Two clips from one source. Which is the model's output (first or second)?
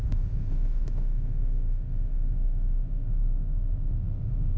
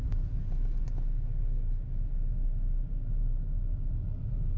first